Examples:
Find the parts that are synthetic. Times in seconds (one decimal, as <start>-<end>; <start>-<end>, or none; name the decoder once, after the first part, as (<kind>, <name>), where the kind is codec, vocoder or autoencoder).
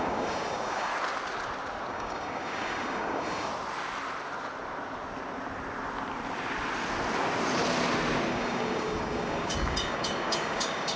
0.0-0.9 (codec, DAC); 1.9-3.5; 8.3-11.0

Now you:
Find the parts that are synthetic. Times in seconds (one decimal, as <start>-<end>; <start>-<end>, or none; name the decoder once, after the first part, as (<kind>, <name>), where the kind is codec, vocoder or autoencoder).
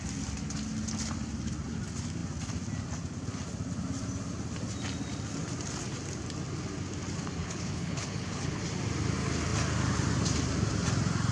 7.4-8.6 (codec, HILCodec)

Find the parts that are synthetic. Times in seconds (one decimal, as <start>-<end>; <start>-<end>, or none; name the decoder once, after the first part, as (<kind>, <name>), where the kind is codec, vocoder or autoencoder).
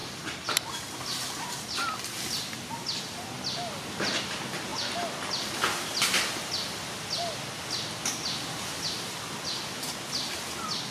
0.0-2.4 (vocoder, BigVGAN v2)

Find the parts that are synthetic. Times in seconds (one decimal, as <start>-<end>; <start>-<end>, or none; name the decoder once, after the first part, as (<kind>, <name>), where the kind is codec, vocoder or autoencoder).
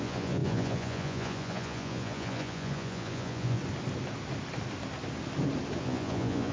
0.0-3.6 (vocoder, Vocos); 5.8-6.5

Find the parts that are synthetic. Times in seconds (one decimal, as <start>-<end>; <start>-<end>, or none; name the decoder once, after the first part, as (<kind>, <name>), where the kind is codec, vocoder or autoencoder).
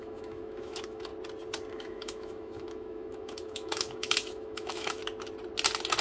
0.0-1.1 (autoencoder, DAC-VAE); 1.7-5.0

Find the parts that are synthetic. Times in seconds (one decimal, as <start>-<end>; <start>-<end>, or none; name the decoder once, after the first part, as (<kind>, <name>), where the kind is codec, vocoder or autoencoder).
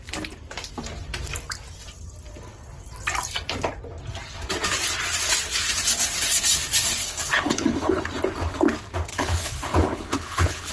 7.0-8.0 (codec, HILCodec); 9.1-10.7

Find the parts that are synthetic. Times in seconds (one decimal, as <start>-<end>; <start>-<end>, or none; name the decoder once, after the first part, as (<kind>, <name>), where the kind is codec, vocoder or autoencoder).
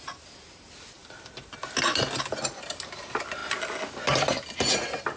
none